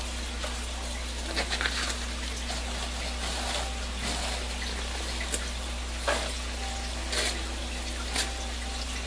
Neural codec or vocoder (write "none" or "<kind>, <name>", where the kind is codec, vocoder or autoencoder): none